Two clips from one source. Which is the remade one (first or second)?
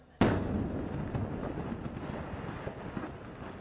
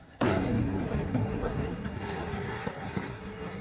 second